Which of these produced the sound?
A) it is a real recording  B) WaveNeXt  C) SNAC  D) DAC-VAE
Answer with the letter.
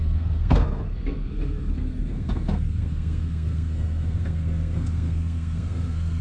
C